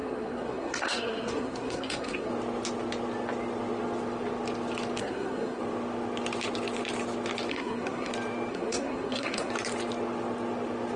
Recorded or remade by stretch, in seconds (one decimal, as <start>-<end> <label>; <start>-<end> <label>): 0.0-2.3 remade; 2.3-5.0 recorded; 5.0-5.6 remade; 5.6-7.5 recorded; 7.5-8.1 remade; 8.1-8.5 recorded; 8.5-9.5 remade; 9.5-11.0 recorded